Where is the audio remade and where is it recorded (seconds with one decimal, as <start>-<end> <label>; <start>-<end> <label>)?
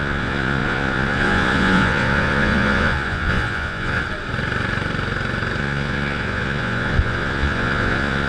0.0-4.0 remade; 4.0-5.6 recorded; 5.6-8.3 remade